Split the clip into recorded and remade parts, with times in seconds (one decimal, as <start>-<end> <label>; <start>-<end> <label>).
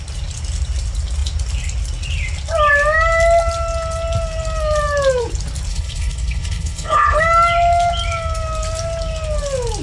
0.0-5.7 recorded; 5.7-7.2 remade; 7.2-9.8 recorded